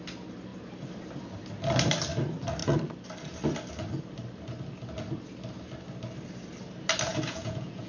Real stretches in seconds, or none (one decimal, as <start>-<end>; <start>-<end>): 0.0-7.1